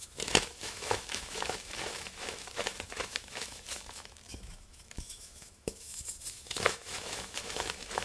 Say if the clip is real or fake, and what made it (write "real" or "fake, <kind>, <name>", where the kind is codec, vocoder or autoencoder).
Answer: fake, autoencoder, DAC-VAE